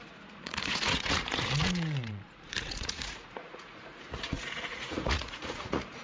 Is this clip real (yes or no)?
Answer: no